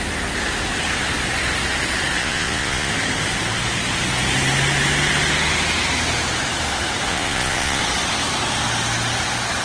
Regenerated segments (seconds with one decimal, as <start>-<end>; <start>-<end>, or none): 2.2-2.9; 7.1-7.8